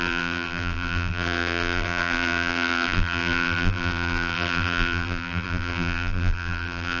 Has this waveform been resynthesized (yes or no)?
yes